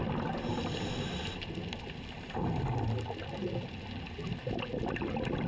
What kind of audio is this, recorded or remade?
recorded